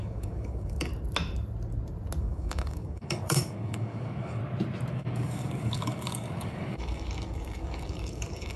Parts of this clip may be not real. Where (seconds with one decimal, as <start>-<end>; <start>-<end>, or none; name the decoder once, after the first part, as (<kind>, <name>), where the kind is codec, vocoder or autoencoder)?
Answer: 0.0-0.9 (codec, DAC); 2.2-4.4; 4.9-8.6

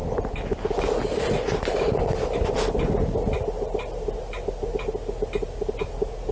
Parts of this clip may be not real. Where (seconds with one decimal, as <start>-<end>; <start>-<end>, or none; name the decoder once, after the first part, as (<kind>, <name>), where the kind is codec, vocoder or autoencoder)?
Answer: none

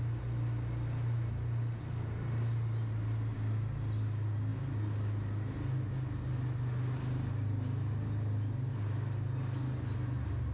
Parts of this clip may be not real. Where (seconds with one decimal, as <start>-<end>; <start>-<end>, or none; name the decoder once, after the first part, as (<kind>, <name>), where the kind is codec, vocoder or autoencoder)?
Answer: none

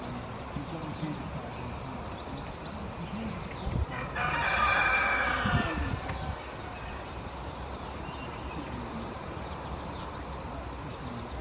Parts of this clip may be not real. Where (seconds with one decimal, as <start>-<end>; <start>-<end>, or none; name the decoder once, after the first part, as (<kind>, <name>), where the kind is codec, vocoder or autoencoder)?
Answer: 8.9-10.2 (vocoder, BigVGAN v2)

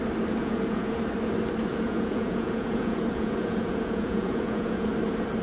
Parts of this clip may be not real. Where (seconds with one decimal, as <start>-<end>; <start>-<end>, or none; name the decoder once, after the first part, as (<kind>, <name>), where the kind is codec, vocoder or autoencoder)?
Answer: 0.4-1.0 (vocoder, Vocos); 1.7-4.9